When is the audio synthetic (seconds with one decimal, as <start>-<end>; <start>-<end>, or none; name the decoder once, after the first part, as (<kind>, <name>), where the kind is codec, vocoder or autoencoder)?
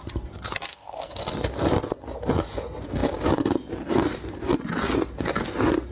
0.7-1.2 (codec, SNAC)